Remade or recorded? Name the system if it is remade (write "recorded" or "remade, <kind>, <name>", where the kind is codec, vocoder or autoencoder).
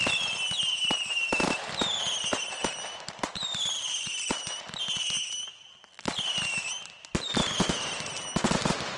recorded